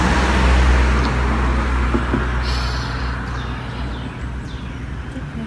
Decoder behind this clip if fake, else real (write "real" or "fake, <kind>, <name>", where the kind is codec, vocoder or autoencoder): real